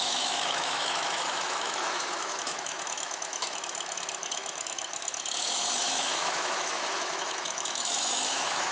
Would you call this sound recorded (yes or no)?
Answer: no